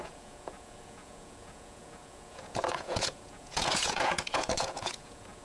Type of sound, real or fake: fake